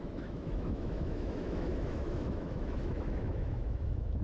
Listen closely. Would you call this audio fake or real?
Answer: fake